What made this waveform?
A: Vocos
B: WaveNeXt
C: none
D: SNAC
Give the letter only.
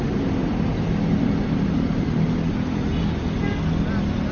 C